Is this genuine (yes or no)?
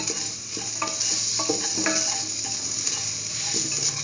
yes